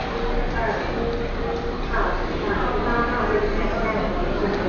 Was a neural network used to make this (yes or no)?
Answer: no